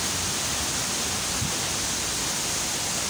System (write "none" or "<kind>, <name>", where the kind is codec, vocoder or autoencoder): none